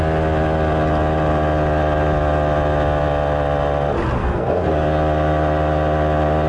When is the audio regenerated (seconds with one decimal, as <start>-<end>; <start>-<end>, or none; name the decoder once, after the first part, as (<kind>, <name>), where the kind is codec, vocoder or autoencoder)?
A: 4.2-4.7 (codec, SNAC)

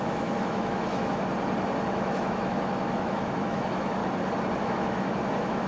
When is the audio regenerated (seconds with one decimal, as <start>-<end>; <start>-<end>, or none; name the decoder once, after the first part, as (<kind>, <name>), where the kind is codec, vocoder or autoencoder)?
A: 0.0-1.3 (autoencoder, DAC-VAE); 1.9-4.0; 4.6-5.7

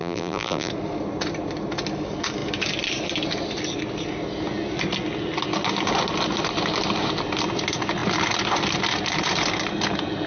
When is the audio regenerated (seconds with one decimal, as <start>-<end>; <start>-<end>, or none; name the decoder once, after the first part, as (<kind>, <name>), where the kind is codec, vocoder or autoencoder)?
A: 0.0-0.7 (vocoder, BigVGAN v2)

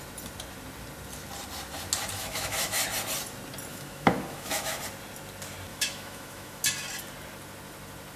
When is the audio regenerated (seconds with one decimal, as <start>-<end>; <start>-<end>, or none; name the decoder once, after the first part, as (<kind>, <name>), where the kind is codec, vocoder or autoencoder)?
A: 2.2-2.8 (autoencoder, DAC-VAE); 3.7-4.8; 5.7-6.6

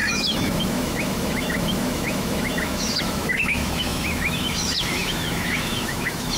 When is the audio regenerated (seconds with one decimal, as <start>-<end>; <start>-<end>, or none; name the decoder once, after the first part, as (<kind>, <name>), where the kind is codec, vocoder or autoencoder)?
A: 0.0-6.4 (autoencoder, DAC-VAE)

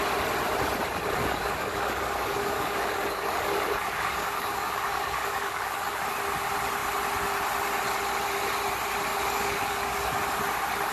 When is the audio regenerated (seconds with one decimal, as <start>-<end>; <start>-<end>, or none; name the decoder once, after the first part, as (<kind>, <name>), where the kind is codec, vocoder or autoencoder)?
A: 1.2-6.0 (codec, DAC); 9.1-10.2

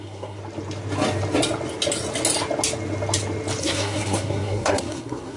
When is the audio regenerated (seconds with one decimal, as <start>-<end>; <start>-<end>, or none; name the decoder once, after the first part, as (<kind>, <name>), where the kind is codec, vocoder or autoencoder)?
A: 0.0-0.4 (codec, SNAC); 3.6-5.4

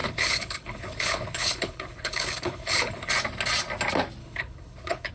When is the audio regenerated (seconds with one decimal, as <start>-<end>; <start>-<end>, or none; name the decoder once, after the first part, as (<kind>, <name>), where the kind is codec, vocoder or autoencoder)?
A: 0.0-3.1 (codec, HILCodec); 4.2-5.1